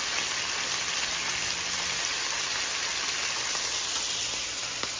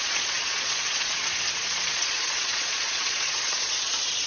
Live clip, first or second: first